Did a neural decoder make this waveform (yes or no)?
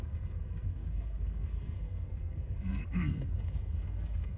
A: yes